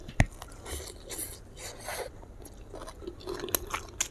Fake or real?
real